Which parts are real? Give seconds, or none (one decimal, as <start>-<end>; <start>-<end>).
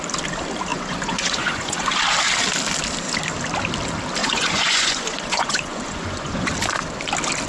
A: 0.0-0.7; 1.9-4.2; 6.5-7.5